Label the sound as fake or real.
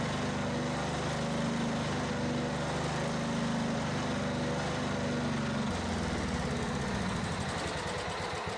real